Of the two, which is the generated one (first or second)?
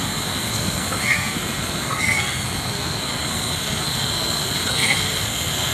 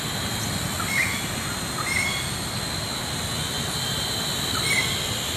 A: first